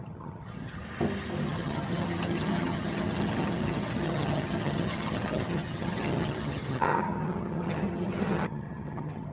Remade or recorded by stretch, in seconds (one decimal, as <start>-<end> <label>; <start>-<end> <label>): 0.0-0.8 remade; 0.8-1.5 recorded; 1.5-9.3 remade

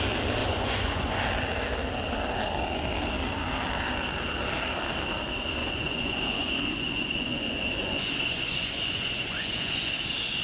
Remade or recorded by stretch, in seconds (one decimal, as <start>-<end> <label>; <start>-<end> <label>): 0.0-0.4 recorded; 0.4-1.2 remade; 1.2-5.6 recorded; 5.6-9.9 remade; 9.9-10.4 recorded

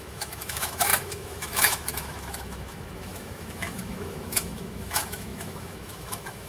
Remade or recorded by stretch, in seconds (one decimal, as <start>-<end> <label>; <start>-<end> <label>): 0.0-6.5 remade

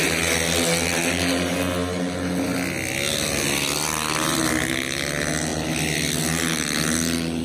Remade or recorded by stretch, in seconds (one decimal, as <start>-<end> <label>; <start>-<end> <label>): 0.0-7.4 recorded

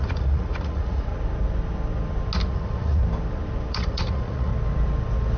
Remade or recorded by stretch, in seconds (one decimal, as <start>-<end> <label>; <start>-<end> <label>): 0.0-1.1 remade; 1.1-2.5 recorded; 2.5-3.0 remade; 3.0-3.7 recorded; 3.7-4.5 remade; 4.5-5.4 recorded

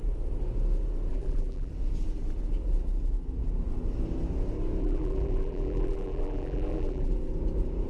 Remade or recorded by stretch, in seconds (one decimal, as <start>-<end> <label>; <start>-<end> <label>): 0.0-1.1 recorded; 1.1-1.7 remade; 1.7-4.8 recorded; 4.8-7.1 remade; 7.1-7.9 recorded

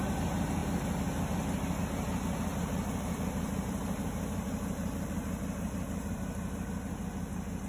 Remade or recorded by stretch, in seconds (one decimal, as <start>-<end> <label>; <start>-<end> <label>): 0.0-2.5 recorded; 2.5-7.0 remade; 7.0-7.7 recorded